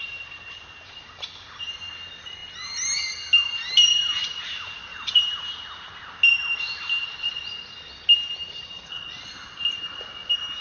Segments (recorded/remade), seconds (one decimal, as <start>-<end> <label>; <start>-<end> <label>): 0.0-3.5 recorded; 3.5-4.3 remade; 4.3-4.9 recorded; 4.9-5.5 remade; 5.5-10.6 recorded